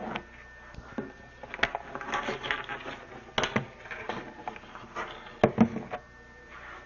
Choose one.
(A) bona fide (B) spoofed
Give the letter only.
A